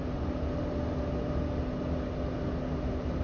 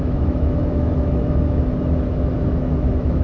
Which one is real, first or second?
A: first